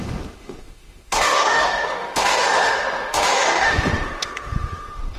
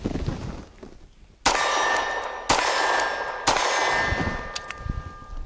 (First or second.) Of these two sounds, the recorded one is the second